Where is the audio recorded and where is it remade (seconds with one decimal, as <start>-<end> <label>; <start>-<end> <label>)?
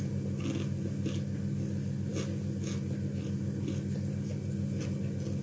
0.0-5.4 recorded